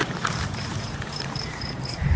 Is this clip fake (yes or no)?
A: yes